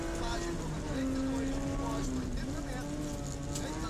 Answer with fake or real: real